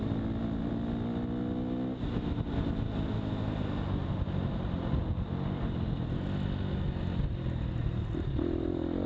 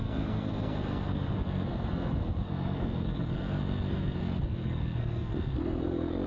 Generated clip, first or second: second